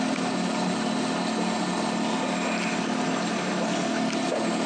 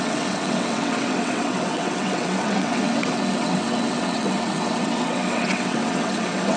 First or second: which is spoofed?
second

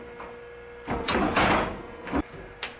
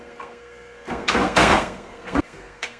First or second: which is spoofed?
second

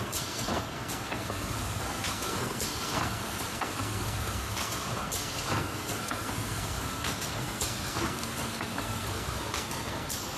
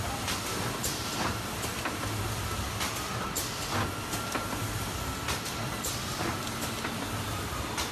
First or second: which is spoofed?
first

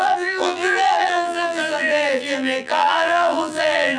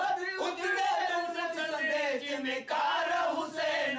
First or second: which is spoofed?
first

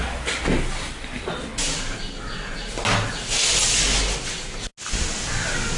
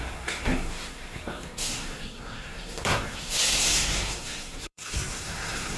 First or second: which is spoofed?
second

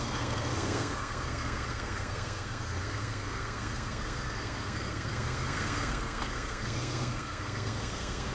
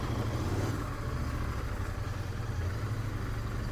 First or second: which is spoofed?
first